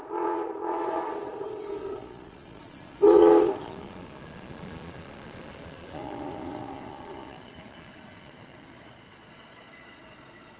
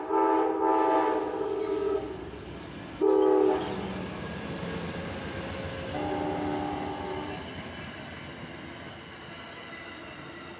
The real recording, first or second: second